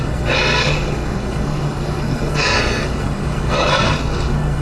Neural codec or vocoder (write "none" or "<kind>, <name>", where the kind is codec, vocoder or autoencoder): codec, SNAC